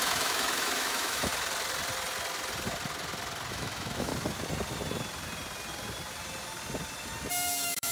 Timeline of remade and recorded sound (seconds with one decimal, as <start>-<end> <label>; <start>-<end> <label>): 0.0-1.3 remade; 1.3-3.5 recorded; 3.5-4.1 remade; 4.1-7.3 recorded; 7.3-7.9 remade